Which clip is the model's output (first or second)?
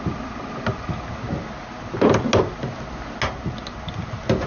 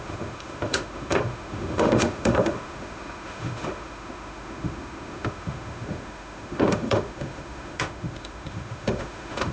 second